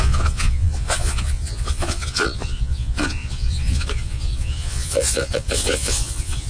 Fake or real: fake